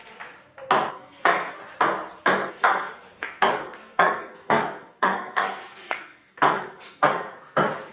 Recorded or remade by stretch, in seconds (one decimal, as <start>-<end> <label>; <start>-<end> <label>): 0.0-0.9 recorded; 0.9-1.6 remade; 1.6-2.5 recorded; 2.5-7.9 remade